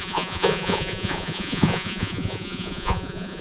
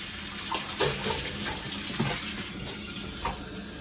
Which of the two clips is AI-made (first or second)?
first